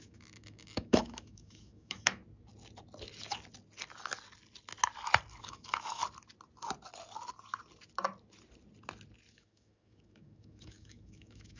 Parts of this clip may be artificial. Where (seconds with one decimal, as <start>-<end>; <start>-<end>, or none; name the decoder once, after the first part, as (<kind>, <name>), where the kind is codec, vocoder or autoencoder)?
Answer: 0.0-2.2 (autoencoder, DAC-VAE); 5.4-6.0; 9.3-11.6